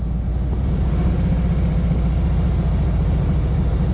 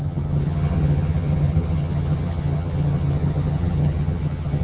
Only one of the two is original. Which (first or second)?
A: first